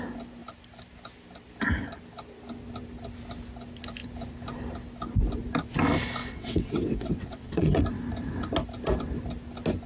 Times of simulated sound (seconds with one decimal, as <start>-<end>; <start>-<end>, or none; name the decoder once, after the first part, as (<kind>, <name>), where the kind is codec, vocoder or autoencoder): 6.2-7.8 (vocoder, WaveNeXt)